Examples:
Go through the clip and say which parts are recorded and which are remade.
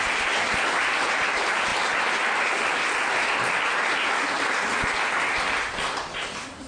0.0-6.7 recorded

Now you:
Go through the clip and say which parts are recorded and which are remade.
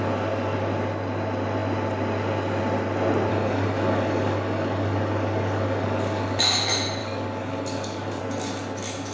0.0-3.3 recorded; 3.3-6.4 remade; 6.4-7.0 recorded; 7.0-8.2 remade; 8.2-9.1 recorded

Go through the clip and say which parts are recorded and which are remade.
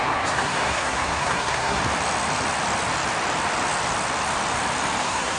0.0-1.8 remade; 1.8-5.0 recorded; 5.0-5.4 remade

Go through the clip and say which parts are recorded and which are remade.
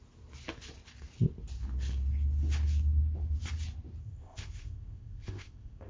0.0-4.0 recorded; 4.0-5.9 remade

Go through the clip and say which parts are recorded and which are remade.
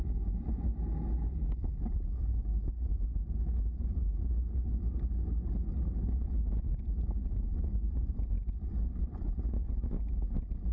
0.0-7.2 recorded; 7.2-8.7 remade; 8.7-10.7 recorded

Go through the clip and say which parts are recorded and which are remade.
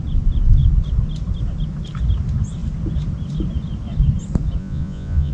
0.0-4.6 recorded; 4.6-5.3 remade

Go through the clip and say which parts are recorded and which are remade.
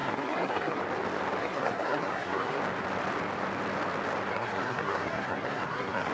0.0-0.8 remade; 0.8-1.4 recorded; 1.4-2.6 remade; 2.6-4.3 recorded; 4.3-6.1 remade